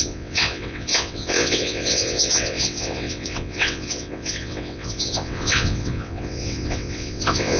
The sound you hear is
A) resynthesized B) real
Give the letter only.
A